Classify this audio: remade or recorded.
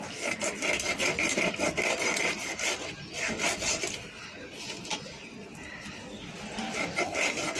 recorded